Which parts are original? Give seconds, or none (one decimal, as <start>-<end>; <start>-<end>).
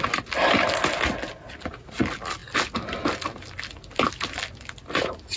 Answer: 0.0-5.4